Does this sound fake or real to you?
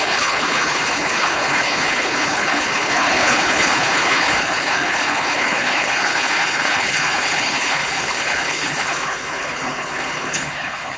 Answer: fake